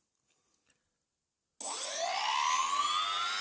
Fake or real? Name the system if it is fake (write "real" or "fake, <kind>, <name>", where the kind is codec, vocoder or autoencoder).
real